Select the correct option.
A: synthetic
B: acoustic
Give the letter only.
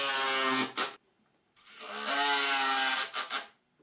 B